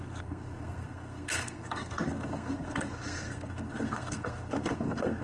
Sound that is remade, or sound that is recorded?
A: remade